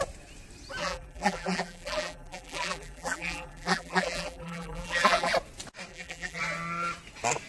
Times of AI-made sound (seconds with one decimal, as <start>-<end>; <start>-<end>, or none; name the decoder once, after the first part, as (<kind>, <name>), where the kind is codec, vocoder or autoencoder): 0.8-5.3 (vocoder, BigVGAN v2); 5.9-6.4